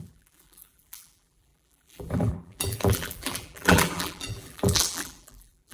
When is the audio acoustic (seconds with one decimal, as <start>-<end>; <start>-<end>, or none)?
none

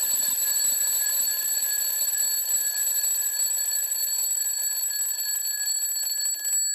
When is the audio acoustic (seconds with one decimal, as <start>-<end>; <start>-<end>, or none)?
0.0-6.7

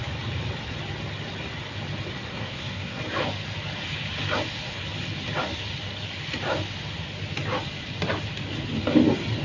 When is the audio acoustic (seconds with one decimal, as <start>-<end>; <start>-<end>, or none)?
0.0-2.3; 3.0-9.4

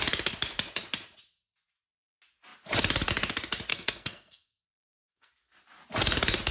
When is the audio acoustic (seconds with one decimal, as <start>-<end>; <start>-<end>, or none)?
0.0-3.7; 5.3-6.5

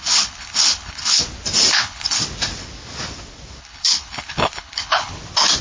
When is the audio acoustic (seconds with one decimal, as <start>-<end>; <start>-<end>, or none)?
1.2-1.7; 2.2-3.6; 5.1-5.6

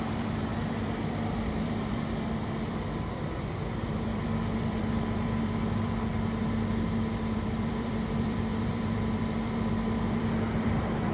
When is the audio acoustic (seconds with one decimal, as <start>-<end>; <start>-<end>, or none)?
none